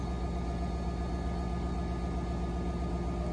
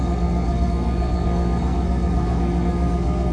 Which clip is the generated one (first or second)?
second